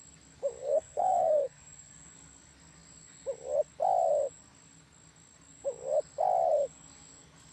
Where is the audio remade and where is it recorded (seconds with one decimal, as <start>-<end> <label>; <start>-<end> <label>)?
0.0-0.6 recorded; 0.6-1.9 remade; 1.9-7.5 recorded